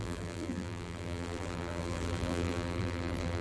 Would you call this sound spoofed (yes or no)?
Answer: yes